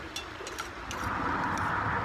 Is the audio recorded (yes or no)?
yes